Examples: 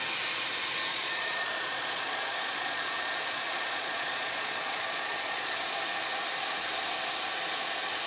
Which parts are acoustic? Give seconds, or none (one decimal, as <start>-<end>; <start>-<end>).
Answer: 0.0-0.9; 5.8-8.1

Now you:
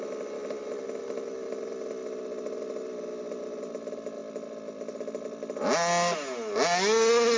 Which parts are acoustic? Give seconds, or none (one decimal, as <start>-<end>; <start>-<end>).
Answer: 0.0-7.4

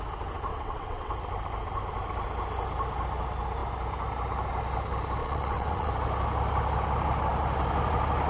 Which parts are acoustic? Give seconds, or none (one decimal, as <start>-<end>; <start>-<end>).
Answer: 0.0-0.5; 1.1-5.2; 5.9-8.3

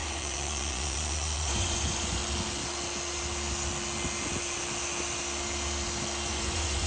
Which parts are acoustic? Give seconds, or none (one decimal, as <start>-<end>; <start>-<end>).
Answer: 2.2-6.3

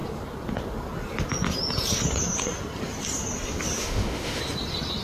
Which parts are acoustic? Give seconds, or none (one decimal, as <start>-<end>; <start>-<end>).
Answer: 0.0-3.8; 4.4-5.0